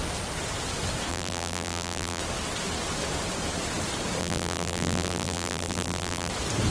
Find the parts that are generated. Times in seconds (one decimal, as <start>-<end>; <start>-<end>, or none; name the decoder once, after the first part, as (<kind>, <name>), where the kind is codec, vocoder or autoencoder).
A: 1.1-2.2 (vocoder, BigVGAN v2); 4.2-6.3